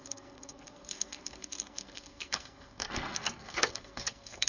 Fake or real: fake